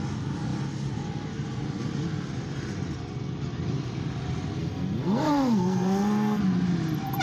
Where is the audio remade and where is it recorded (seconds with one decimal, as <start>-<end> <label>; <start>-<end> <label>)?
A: 0.0-4.6 recorded; 4.6-6.4 remade; 6.4-7.2 recorded